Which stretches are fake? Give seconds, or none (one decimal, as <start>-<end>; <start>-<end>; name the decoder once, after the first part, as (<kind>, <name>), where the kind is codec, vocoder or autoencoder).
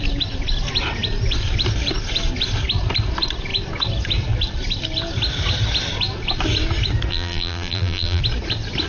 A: 7.1-8.2 (vocoder, BigVGAN v2)